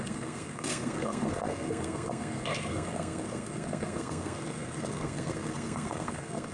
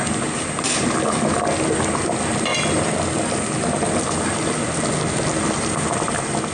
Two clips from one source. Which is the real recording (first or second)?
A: second